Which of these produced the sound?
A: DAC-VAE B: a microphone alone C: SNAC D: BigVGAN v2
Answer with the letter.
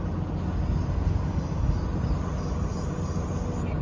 B